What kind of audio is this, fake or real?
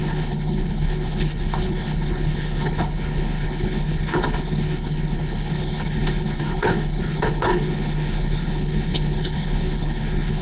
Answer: fake